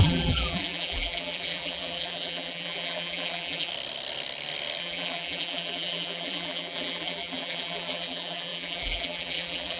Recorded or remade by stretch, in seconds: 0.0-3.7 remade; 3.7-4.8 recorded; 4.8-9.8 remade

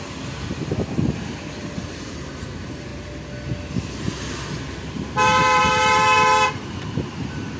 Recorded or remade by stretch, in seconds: 0.0-2.9 remade; 2.9-4.5 recorded; 4.5-7.6 remade